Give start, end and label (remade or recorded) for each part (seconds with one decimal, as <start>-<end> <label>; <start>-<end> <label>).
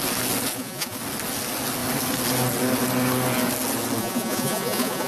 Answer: 0.0-0.5 recorded; 0.5-1.0 remade; 1.0-4.0 recorded; 4.0-5.1 remade